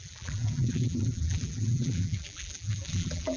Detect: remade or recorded remade